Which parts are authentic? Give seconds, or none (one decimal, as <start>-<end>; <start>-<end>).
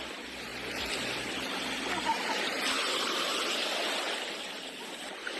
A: 0.0-5.4